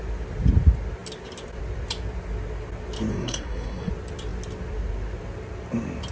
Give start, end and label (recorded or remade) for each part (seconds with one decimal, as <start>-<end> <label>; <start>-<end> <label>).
0.0-3.1 recorded; 3.1-3.9 remade; 3.9-6.1 recorded